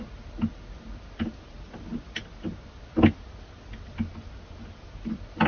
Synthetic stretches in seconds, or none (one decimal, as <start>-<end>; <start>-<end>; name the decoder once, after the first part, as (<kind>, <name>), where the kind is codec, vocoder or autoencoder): none